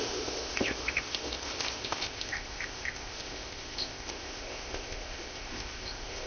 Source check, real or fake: fake